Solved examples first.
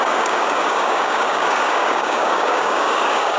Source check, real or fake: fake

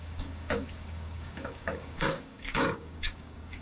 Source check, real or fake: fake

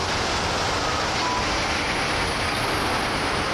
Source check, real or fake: real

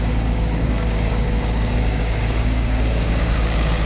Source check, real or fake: fake